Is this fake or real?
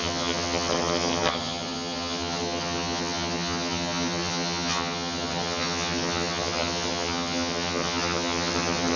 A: fake